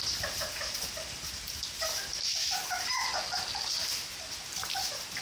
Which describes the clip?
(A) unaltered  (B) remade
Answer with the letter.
A